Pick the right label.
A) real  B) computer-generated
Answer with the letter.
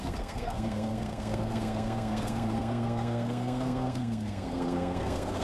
B